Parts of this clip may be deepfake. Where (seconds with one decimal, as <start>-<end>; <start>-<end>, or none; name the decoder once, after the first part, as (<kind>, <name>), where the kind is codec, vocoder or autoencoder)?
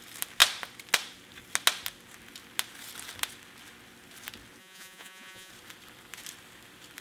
4.6-5.5 (vocoder, Vocos)